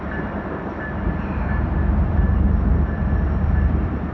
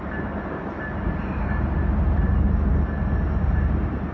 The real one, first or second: second